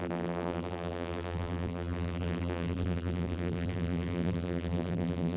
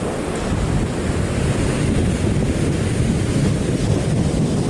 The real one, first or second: second